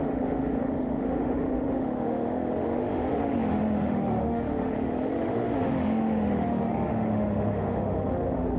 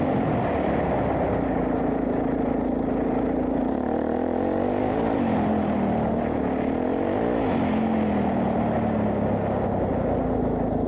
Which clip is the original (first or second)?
second